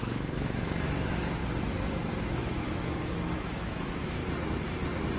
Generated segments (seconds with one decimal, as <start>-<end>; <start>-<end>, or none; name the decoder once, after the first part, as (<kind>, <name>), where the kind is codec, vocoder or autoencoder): 0.0-1.4 (autoencoder, DAC-VAE); 2.2-4.2